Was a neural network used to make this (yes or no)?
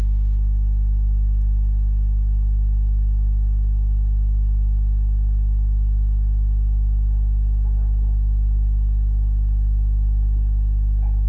no